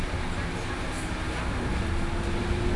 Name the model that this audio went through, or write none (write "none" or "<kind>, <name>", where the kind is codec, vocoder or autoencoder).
none